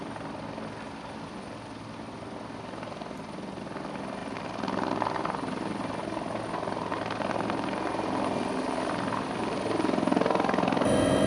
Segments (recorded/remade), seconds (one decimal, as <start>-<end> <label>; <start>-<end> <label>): 0.0-11.3 recorded